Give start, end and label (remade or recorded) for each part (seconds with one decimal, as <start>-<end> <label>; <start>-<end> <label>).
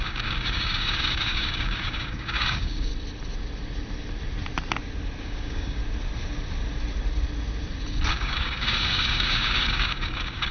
0.0-2.9 remade; 2.9-5.2 recorded; 5.2-5.8 remade; 5.8-8.1 recorded; 8.1-10.5 remade